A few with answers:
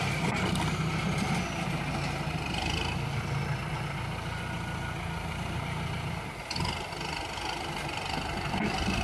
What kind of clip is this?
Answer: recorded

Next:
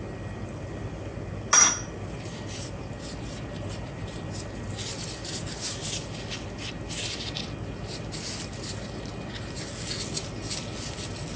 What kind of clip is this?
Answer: recorded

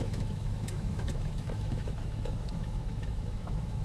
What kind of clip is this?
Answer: remade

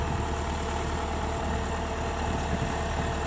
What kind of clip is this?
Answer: recorded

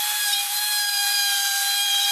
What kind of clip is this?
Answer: remade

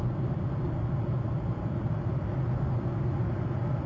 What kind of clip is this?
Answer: recorded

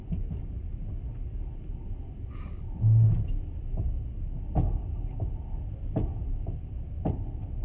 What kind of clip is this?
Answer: recorded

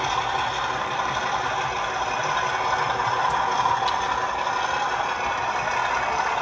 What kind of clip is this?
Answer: recorded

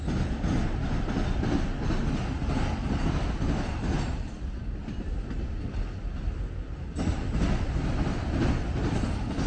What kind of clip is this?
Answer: recorded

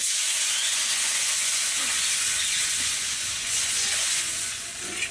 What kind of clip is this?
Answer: remade